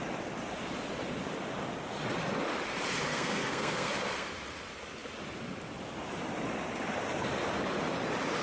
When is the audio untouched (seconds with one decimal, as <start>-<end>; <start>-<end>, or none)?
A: 0.0-3.1; 4.3-8.4